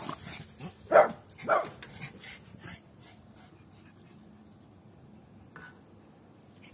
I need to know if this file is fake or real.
real